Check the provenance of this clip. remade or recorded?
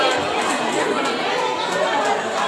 recorded